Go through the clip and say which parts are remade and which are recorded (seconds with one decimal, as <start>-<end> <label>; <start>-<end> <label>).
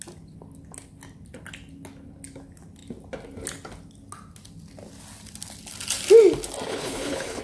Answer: 0.0-6.7 recorded; 6.7-7.4 remade